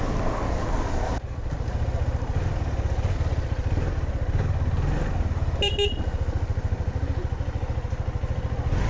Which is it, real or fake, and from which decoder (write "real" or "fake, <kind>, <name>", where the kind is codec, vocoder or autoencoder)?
real